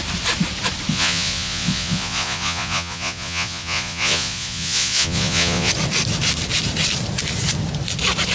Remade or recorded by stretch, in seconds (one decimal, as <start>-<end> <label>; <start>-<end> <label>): 0.0-0.9 recorded; 0.9-5.7 remade; 5.7-8.3 recorded